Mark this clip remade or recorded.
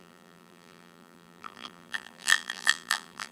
remade